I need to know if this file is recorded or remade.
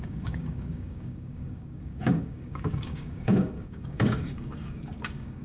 remade